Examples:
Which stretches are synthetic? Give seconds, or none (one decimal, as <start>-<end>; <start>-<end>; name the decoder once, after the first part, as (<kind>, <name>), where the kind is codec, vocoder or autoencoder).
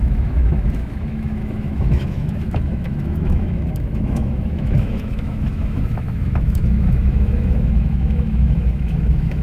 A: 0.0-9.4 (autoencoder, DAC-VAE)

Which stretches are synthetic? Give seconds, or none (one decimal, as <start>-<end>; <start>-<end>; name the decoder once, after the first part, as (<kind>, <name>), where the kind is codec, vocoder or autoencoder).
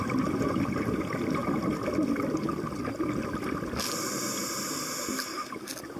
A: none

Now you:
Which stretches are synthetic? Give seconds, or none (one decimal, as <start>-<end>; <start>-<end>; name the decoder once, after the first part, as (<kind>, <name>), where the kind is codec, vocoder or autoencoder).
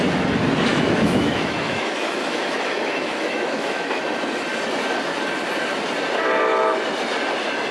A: 0.7-4.0 (autoencoder, DAC-VAE)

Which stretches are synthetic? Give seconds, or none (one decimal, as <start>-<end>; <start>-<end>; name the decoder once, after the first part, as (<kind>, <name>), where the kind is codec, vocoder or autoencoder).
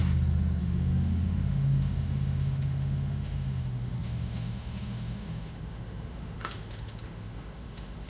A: 0.6-8.1 (autoencoder, DAC-VAE)